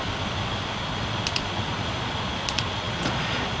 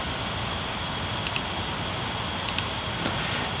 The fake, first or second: first